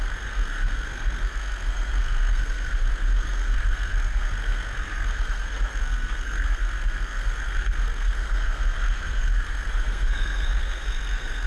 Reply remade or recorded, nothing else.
remade